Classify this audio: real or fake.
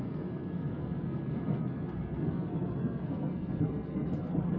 fake